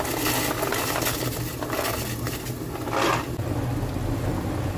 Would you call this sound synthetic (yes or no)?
no